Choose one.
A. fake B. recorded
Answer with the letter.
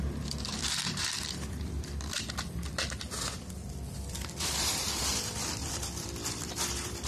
A